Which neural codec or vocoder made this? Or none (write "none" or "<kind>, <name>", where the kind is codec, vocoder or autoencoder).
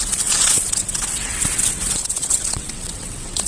vocoder, WaveNeXt